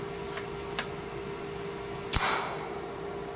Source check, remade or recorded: recorded